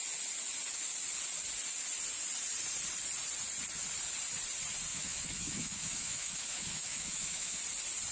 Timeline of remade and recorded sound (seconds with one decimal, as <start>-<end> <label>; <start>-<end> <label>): 0.0-4.9 recorded; 4.9-7.6 remade; 7.6-8.1 recorded